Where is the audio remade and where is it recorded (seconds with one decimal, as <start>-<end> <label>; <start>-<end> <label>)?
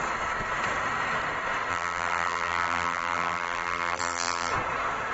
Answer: 0.0-1.7 recorded; 1.7-4.5 remade; 4.5-5.1 recorded